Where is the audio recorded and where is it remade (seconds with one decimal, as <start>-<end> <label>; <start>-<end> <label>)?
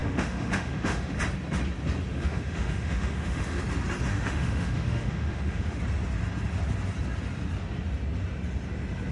0.0-1.2 remade; 1.2-2.1 recorded; 2.1-3.6 remade; 3.6-4.1 recorded; 4.1-5.8 remade; 5.8-9.1 recorded